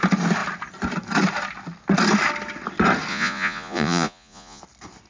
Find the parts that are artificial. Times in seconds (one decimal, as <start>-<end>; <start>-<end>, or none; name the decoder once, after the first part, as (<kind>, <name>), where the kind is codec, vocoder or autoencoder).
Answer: 3.1-4.6 (vocoder, Vocos)